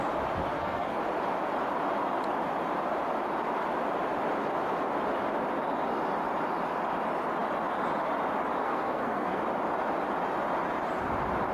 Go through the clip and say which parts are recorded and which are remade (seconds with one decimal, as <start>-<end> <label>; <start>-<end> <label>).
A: 0.0-0.5 recorded; 0.5-1.0 remade; 1.0-8.6 recorded; 8.6-9.4 remade; 9.4-11.5 recorded